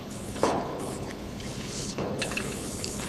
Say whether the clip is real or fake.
fake